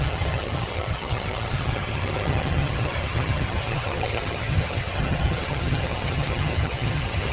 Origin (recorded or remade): remade